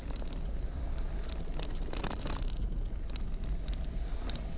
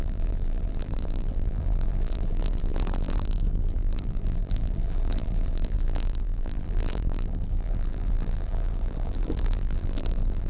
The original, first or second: first